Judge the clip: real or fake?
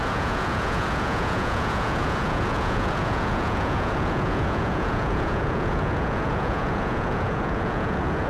fake